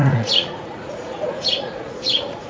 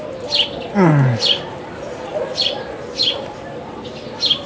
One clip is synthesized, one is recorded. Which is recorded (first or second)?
second